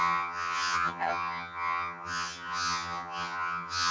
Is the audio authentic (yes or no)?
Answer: no